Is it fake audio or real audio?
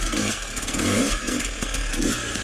fake